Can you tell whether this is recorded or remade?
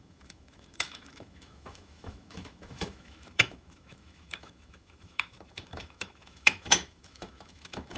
remade